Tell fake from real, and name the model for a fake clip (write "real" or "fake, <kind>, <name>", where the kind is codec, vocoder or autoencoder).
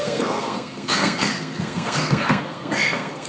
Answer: fake, codec, SNAC